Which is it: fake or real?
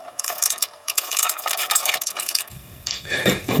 fake